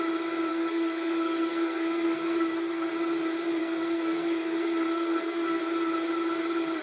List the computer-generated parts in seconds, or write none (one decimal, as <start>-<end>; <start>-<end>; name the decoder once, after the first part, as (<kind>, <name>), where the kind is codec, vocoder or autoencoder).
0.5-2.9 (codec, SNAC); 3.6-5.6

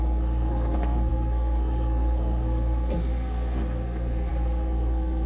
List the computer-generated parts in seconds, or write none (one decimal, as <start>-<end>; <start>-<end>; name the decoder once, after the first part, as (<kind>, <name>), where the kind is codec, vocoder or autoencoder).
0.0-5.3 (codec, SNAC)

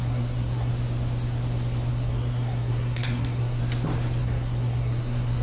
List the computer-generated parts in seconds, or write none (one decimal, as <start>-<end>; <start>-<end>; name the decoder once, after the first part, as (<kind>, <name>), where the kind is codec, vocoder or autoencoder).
0.0-0.7 (codec, SNAC); 1.9-3.6; 4.2-5.4

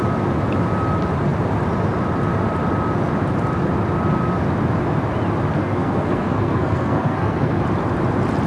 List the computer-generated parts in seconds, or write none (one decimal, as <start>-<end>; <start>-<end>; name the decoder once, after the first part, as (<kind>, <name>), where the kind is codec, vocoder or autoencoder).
5.6-7.6 (codec, SNAC)

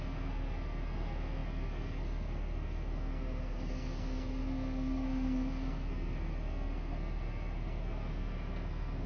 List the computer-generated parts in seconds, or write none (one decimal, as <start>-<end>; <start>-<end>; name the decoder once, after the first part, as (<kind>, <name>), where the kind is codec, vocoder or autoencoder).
0.0-9.1 (codec, SNAC)

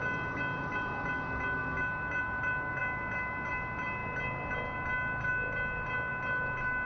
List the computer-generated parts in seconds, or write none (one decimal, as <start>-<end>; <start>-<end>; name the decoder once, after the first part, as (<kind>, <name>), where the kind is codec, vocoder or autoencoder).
none